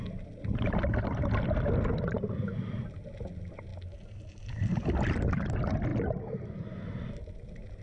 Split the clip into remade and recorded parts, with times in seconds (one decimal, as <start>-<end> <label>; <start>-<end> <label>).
0.0-7.8 recorded